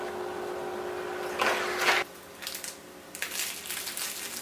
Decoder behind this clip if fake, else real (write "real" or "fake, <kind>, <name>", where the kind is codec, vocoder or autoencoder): real